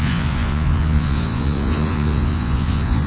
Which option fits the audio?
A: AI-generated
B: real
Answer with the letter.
A